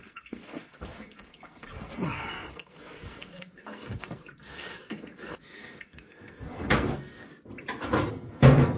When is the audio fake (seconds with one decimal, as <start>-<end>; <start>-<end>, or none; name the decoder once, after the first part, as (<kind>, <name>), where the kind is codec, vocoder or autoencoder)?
0.0-7.3 (codec, SNAC); 8.1-8.8